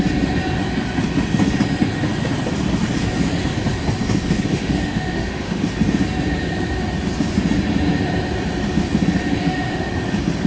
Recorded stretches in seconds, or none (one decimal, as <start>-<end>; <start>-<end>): 0.0-4.5; 5.6-9.4; 9.9-10.5